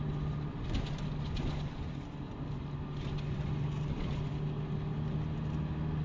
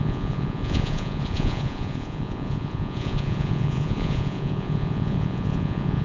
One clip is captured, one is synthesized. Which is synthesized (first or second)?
second